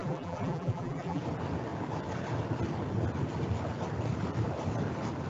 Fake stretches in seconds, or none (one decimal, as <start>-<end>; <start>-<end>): 0.0-1.2